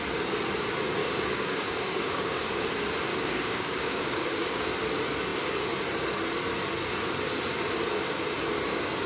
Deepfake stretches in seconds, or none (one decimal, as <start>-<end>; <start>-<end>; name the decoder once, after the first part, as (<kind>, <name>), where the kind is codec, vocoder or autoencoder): 1.0-2.7 (codec, DAC); 3.1-4.7